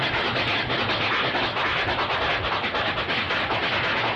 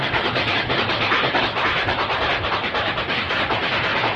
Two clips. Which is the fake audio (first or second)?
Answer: second